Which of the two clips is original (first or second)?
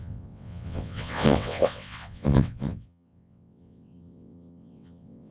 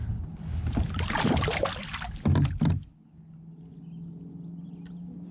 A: second